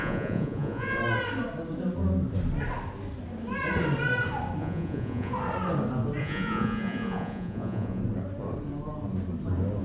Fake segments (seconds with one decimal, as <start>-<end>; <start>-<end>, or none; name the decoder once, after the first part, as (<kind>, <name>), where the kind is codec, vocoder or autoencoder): 0.0-1.0 (vocoder, Vocos); 4.6-5.3; 6.2-8.0